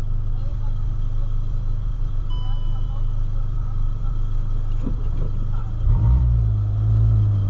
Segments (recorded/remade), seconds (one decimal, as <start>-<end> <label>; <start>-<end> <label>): 0.0-0.5 recorded; 0.5-5.0 remade; 5.0-5.6 recorded; 5.6-7.5 remade